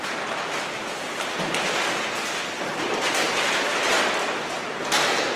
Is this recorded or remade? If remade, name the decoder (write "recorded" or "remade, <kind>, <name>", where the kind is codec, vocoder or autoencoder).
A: recorded